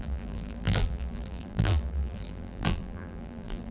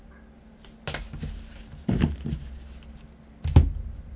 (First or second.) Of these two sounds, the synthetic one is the first